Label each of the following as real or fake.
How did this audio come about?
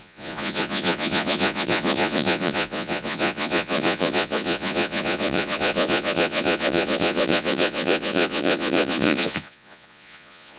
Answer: fake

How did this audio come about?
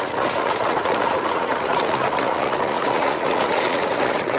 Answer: fake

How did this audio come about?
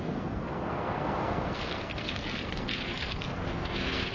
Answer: fake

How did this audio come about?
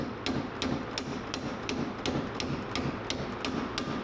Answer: real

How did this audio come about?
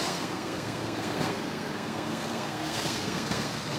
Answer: fake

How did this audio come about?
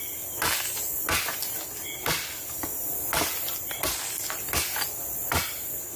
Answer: real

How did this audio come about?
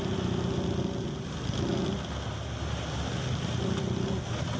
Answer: real